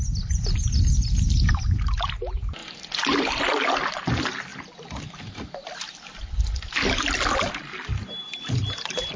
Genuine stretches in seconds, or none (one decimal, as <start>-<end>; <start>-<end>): 0.0-2.6; 3.5-4.5; 7.3-8.2